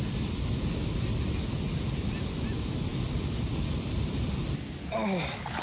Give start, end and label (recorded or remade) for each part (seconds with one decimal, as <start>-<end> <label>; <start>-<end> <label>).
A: 0.0-2.9 recorded; 2.9-4.4 remade; 4.4-5.6 recorded